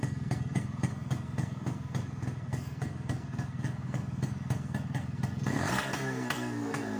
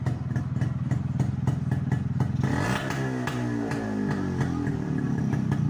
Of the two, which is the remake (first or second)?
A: first